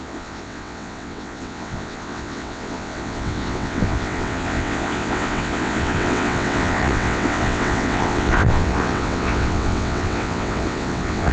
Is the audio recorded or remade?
remade